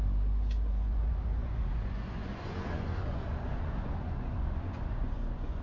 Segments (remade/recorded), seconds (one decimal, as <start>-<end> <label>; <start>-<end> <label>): 0.0-0.7 recorded; 0.7-5.6 remade